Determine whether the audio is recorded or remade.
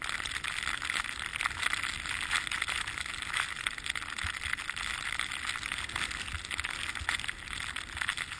recorded